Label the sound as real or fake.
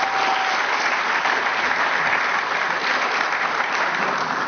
real